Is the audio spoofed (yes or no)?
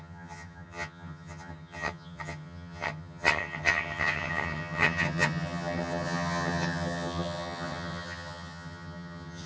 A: yes